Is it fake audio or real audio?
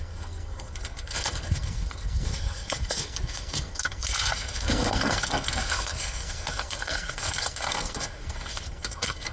fake